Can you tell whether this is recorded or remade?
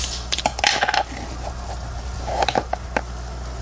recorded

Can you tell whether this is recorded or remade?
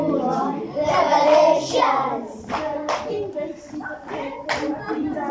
recorded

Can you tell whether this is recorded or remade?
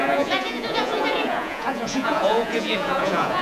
remade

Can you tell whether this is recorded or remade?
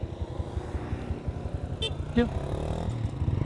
recorded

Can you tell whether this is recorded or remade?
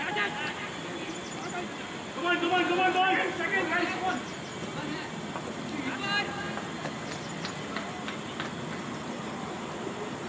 recorded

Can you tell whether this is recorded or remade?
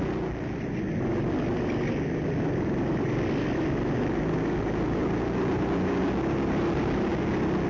recorded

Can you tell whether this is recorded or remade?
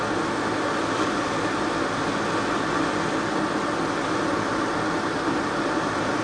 recorded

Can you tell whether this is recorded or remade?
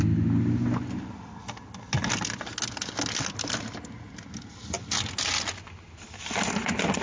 recorded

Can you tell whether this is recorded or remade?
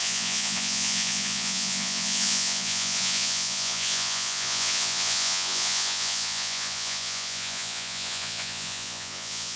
remade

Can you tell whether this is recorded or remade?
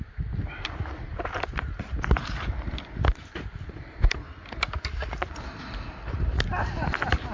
recorded